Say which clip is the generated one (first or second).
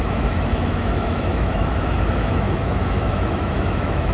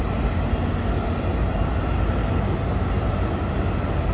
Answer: first